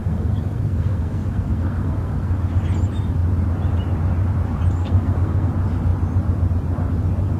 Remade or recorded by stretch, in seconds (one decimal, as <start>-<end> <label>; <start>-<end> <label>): 0.0-2.5 remade; 2.5-4.8 recorded; 4.8-5.5 remade; 5.5-7.4 recorded